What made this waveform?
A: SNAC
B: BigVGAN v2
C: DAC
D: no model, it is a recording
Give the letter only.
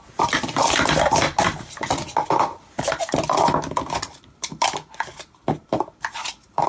D